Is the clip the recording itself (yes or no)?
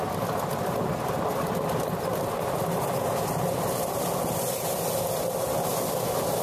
yes